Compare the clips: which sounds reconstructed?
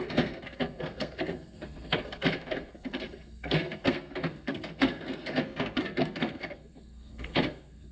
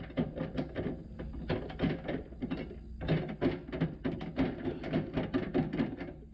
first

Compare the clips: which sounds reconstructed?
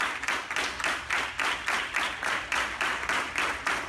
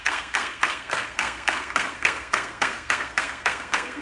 second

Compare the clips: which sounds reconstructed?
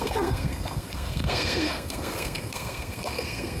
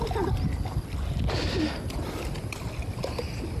first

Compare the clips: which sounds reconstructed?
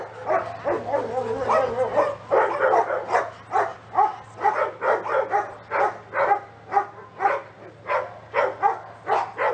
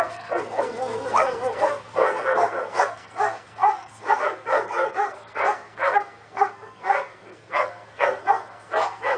second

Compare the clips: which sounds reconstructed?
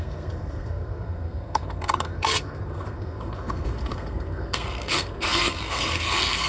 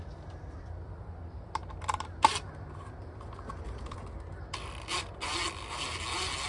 first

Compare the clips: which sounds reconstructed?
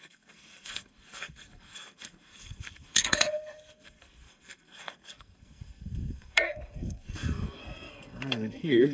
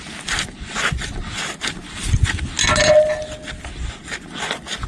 first